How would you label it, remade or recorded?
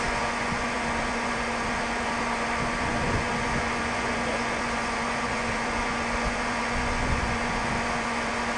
remade